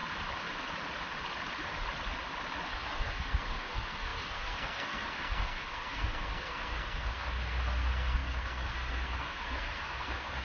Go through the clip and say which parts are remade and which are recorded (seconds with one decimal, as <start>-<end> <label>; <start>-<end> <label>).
0.0-2.7 recorded; 2.7-10.4 remade